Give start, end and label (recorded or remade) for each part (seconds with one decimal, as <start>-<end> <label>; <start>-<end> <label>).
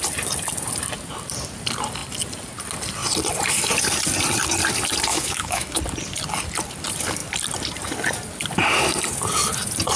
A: 0.0-5.1 recorded; 5.1-5.8 remade; 5.8-10.0 recorded